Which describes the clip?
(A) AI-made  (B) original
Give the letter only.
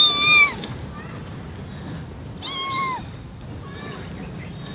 B